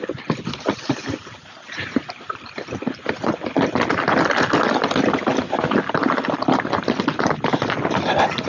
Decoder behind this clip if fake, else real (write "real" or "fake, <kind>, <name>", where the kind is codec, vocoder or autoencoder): real